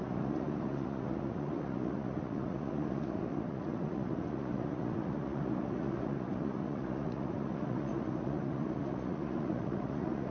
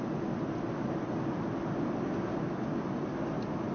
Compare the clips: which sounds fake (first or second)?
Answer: first